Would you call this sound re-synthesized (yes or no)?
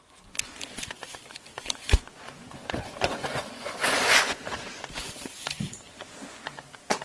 yes